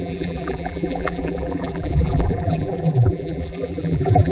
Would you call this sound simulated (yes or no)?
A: yes